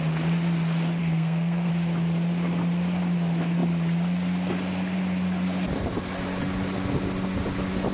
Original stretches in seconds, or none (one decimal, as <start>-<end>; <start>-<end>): 0.0-1.0; 1.7-7.9